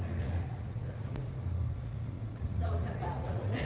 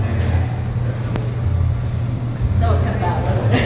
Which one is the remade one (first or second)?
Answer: first